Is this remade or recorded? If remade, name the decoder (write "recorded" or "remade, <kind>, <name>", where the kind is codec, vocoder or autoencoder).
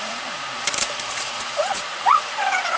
remade, vocoder, Vocos